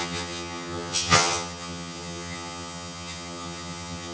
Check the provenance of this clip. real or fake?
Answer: fake